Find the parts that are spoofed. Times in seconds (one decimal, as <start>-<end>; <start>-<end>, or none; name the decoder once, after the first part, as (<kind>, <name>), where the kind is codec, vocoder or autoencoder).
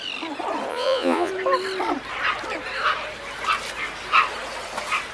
0.7-1.3 (vocoder, Vocos)